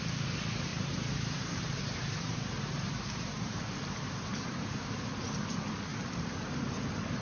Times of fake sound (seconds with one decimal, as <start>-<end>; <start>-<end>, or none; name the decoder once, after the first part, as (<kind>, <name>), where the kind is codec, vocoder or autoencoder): 0.7-5.0 (vocoder, BigVGAN v2); 5.9-6.4